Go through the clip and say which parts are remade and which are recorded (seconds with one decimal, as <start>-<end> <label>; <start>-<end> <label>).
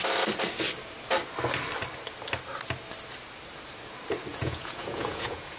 0.0-4.3 recorded; 4.3-5.6 remade